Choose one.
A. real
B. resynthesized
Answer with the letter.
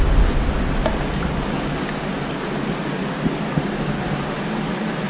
A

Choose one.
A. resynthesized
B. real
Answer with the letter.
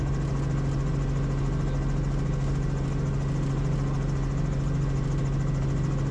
B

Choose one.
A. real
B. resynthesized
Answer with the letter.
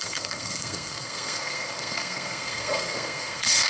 B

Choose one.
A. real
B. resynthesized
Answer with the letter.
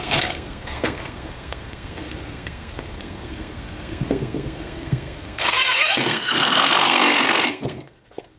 B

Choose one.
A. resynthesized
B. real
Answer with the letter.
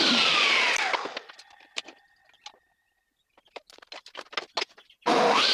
B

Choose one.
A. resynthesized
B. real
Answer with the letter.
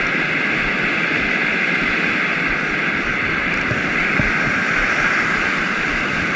B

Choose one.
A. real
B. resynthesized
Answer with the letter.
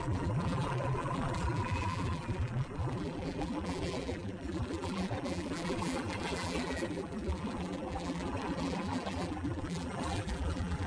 B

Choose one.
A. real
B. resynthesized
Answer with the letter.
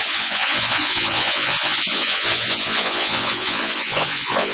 B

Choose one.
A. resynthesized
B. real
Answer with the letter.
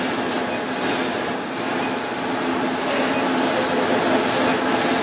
B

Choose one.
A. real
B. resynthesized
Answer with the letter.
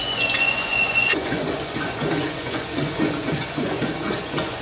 B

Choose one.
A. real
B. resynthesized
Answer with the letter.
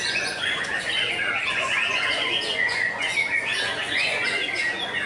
B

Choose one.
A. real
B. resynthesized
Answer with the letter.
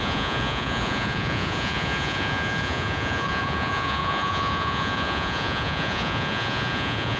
B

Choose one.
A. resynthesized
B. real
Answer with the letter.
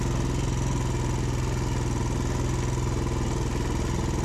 B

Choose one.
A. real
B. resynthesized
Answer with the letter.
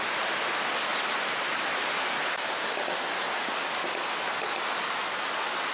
A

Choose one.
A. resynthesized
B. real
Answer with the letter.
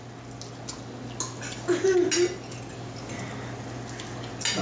B